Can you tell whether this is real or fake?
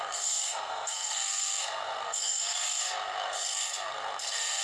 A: fake